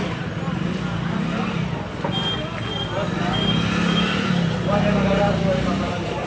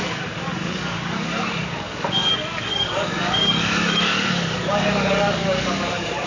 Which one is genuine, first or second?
first